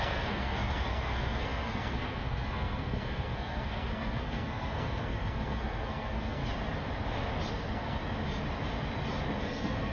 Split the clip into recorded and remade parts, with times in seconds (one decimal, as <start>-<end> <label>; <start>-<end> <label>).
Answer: 0.0-6.4 remade; 6.4-7.5 recorded; 7.5-8.0 remade; 8.0-9.4 recorded; 9.4-9.9 remade